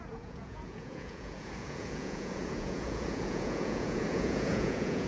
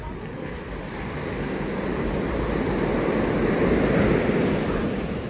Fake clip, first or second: first